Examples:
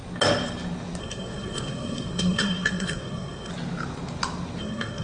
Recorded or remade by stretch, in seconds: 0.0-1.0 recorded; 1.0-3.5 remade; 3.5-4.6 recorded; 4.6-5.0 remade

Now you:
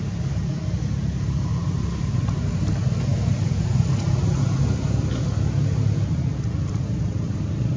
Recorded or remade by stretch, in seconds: 0.0-7.8 recorded

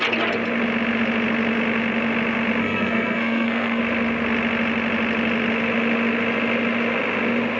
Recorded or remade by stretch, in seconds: 0.0-2.6 recorded; 2.6-3.8 remade; 3.8-7.6 recorded

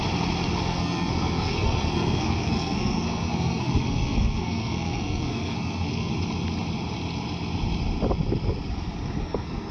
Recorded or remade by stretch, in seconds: 0.0-0.6 recorded; 0.6-6.1 remade; 6.1-9.2 recorded; 9.2-9.7 remade

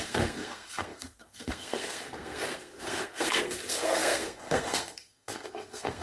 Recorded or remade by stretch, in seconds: 0.0-6.0 remade